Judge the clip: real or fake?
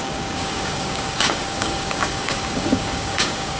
fake